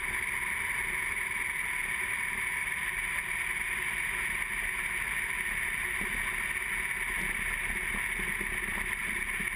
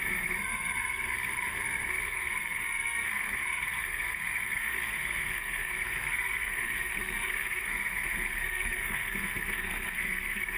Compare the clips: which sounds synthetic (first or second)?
second